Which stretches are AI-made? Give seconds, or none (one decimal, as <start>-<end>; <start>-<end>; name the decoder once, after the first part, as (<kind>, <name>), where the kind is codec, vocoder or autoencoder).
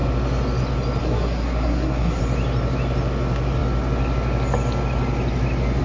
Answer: 1.0-2.2 (codec, SNAC)